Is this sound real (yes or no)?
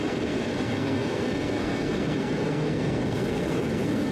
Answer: no